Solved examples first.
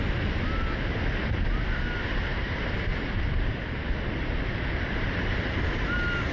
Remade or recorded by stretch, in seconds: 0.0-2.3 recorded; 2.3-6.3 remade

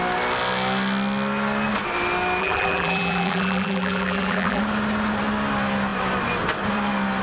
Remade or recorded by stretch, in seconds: 0.0-2.4 recorded; 2.4-4.6 remade; 4.6-7.2 recorded